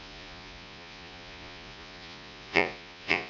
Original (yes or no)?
no